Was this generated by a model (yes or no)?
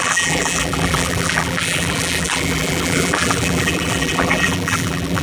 yes